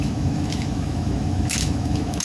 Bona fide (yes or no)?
no